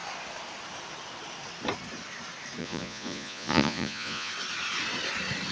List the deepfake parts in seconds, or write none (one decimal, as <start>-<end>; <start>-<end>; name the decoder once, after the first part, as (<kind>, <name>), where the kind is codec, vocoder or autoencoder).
2.6-4.3 (vocoder, Vocos)